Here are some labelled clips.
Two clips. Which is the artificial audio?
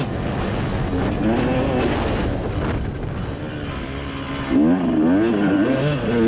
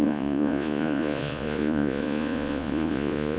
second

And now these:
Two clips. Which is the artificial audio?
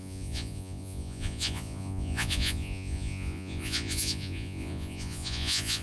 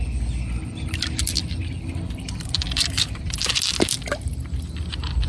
first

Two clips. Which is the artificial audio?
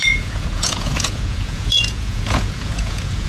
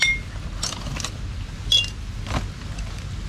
first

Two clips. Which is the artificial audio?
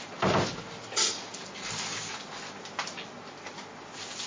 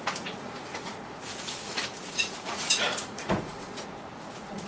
second